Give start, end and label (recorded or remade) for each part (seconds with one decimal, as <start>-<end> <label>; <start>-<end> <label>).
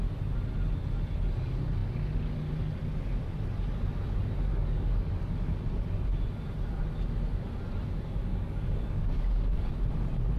0.0-4.5 recorded; 4.5-5.5 remade; 5.5-8.3 recorded; 8.3-9.7 remade; 9.7-10.4 recorded